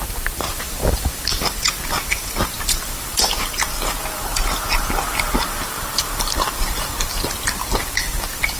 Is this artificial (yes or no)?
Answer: yes